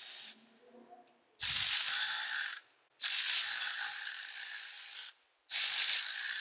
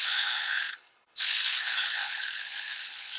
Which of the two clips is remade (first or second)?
second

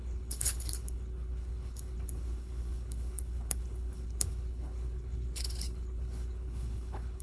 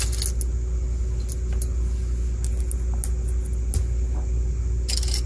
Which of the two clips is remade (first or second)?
first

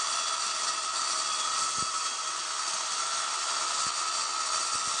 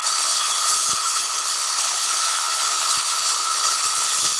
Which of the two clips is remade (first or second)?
second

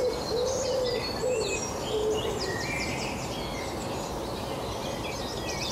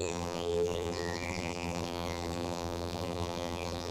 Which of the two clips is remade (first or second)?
second